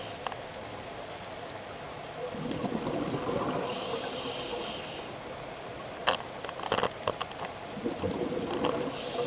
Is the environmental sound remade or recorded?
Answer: recorded